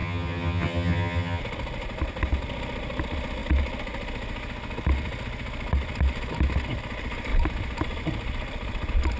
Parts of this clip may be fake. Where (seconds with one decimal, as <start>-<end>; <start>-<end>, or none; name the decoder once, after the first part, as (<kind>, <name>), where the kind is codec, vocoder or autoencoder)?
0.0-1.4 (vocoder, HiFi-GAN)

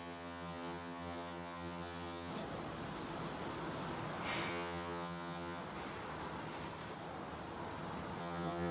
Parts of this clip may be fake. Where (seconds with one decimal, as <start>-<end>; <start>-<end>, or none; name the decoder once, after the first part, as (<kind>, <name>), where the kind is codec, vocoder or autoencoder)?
0.0-2.3 (vocoder, HiFi-GAN); 4.5-5.6; 8.2-8.7

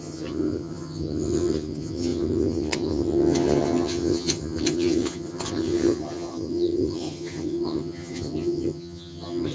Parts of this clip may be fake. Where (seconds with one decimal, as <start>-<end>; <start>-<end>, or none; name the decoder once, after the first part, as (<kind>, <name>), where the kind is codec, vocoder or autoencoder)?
0.0-9.5 (vocoder, HiFi-GAN)

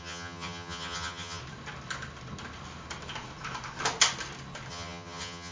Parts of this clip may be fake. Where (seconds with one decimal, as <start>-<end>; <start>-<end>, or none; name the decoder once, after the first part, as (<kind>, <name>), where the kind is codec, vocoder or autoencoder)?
0.0-1.4 (vocoder, HiFi-GAN); 4.7-5.5

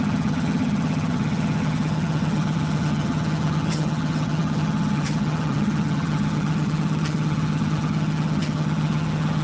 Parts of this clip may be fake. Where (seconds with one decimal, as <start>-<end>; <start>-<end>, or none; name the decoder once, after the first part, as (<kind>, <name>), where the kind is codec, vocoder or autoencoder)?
0.0-9.4 (vocoder, HiFi-GAN)

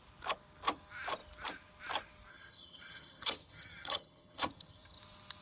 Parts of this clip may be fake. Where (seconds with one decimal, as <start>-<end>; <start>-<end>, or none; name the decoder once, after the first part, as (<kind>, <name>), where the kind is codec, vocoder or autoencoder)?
2.3-5.0 (vocoder, HiFi-GAN)

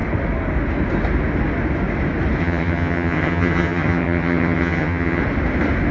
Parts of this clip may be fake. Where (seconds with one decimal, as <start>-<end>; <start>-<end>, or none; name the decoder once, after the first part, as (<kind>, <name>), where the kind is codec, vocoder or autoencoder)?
2.4-5.2 (vocoder, HiFi-GAN)

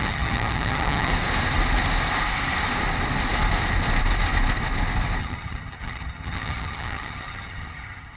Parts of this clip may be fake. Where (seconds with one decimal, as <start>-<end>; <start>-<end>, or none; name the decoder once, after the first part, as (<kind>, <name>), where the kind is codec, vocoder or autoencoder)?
0.0-1.1 (vocoder, HiFi-GAN); 5.2-8.2